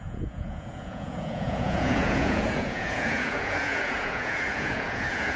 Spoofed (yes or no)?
yes